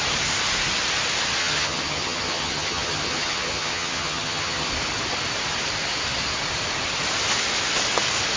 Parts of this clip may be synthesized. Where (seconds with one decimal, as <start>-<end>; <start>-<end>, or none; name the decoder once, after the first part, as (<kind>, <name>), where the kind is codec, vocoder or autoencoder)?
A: 1.4-4.7 (vocoder, HiFi-GAN)